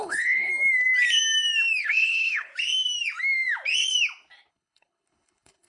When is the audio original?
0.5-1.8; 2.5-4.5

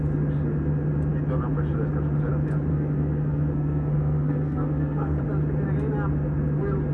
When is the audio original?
0.0-2.7; 5.2-6.9